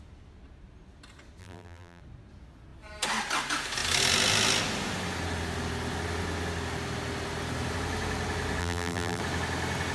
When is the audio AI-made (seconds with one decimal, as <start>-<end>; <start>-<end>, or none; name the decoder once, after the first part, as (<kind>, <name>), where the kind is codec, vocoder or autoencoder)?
1.4-2.0 (vocoder, BigVGAN v2); 8.6-9.2